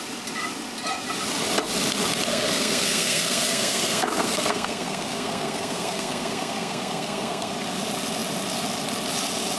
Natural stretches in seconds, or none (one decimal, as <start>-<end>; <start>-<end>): 0.0-2.3; 7.5-9.6